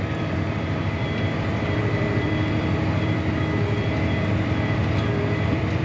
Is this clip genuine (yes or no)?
no